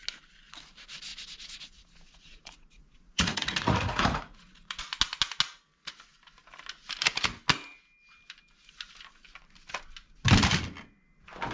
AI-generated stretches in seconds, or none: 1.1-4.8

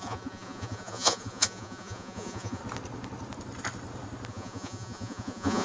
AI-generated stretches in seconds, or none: 0.0-2.6; 4.3-5.6

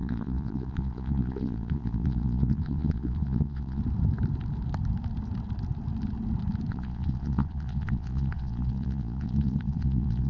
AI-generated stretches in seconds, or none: 0.0-3.8; 6.7-10.3